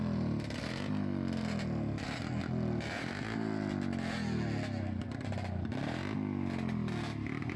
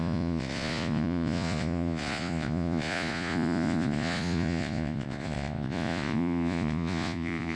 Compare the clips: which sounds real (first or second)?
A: first